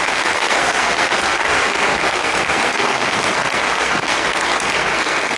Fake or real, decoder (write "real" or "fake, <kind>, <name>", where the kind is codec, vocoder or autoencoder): fake, codec, SNAC